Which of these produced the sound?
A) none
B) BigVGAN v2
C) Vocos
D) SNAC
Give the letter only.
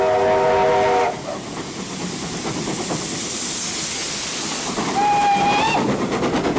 A